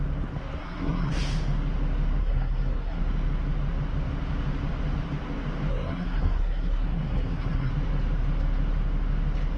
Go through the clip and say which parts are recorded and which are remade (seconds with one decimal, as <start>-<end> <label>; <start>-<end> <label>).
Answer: 0.0-0.6 recorded; 0.6-1.2 remade; 1.2-2.2 recorded; 2.2-3.0 remade; 3.0-5.7 recorded; 5.7-7.7 remade; 7.7-9.6 recorded